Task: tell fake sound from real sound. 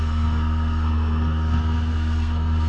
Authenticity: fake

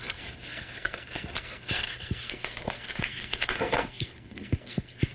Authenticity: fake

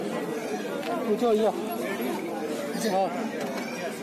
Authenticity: real